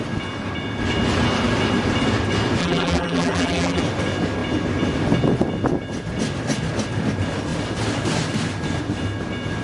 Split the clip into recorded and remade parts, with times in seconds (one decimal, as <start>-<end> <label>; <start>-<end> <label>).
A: 0.0-2.6 recorded; 2.6-3.8 remade; 3.8-9.6 recorded